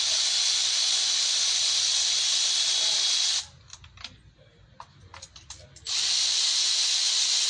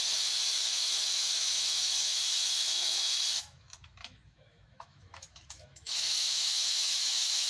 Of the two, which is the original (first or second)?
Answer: first